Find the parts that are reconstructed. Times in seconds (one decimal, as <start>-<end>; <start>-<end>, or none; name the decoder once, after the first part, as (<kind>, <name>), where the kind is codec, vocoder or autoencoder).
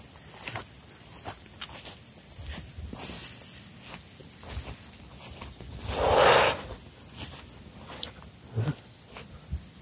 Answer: none